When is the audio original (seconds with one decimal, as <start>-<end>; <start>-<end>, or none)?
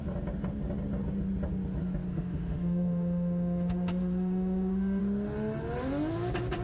0.0-2.1; 5.0-6.6